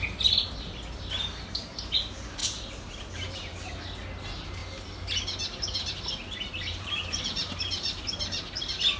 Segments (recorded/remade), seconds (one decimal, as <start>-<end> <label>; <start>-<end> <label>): 0.0-2.4 recorded; 2.4-3.8 remade; 3.8-6.7 recorded; 6.7-7.2 remade; 7.2-9.0 recorded